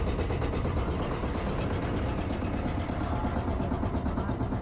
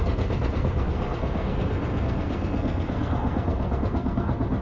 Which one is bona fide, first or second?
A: first